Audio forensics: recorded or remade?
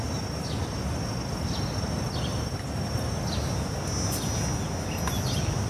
recorded